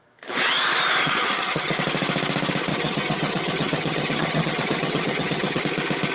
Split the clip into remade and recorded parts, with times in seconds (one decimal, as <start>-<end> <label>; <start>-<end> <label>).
0.0-1.0 recorded; 1.0-1.7 remade; 1.7-2.7 recorded; 2.7-5.6 remade; 5.6-6.1 recorded